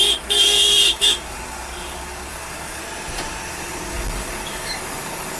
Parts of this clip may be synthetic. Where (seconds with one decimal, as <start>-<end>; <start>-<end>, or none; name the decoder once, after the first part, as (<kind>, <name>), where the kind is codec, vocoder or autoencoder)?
0.0-2.8 (codec, DAC); 3.5-5.4